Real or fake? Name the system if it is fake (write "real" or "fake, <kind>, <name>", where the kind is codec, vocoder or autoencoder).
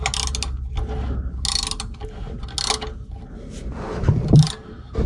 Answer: real